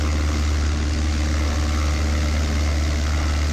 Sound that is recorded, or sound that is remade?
recorded